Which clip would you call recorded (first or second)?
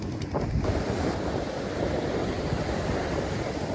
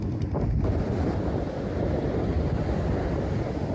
second